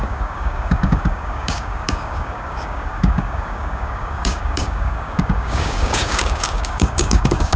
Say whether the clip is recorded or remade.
remade